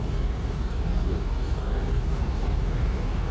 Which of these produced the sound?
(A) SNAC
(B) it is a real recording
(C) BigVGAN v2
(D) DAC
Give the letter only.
D